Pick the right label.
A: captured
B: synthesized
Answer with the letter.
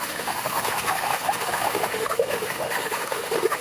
B